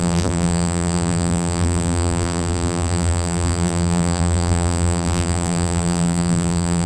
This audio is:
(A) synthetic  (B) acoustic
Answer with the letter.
A